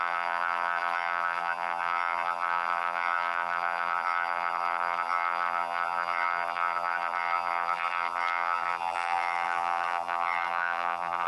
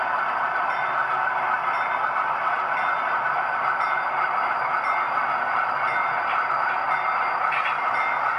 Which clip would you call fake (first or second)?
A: first